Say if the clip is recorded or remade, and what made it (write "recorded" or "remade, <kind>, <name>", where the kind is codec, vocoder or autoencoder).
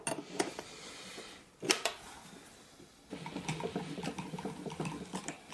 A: recorded